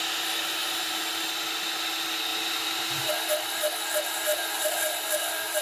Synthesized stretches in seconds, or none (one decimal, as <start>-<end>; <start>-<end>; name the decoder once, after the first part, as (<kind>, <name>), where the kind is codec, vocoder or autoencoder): 0.6-1.1 (vocoder, BigVGAN v2); 2.3-3.1; 4.3-5.6